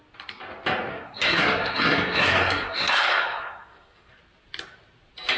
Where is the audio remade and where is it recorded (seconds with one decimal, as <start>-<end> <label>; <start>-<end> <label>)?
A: 0.0-0.9 recorded; 0.9-4.1 remade; 4.1-5.4 recorded